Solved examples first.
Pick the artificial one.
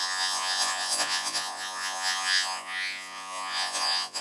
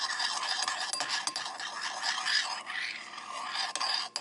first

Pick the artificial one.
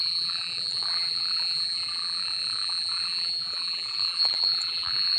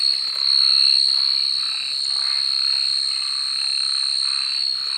first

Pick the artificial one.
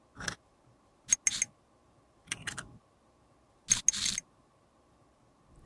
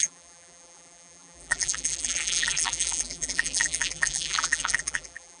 second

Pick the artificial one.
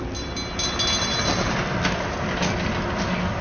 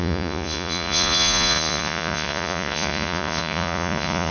second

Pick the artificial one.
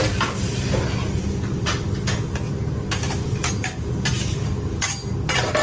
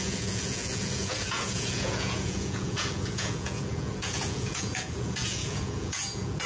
second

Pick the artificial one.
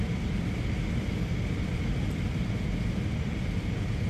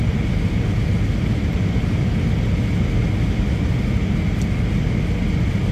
first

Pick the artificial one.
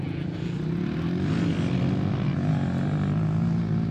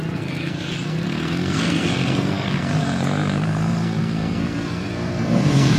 second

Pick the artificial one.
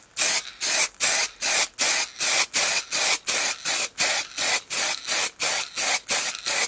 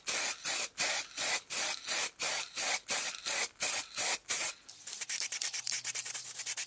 second